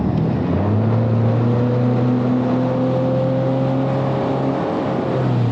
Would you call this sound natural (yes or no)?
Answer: yes